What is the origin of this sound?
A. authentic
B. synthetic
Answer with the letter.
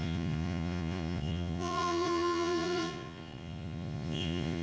B